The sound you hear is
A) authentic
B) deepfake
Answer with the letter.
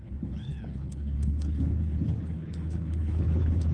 B